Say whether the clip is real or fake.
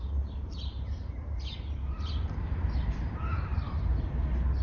fake